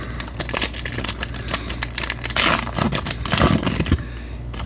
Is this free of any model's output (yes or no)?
yes